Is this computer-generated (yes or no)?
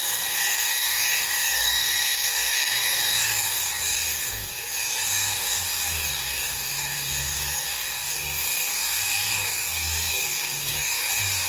yes